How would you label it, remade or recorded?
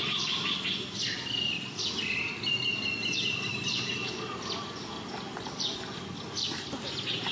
recorded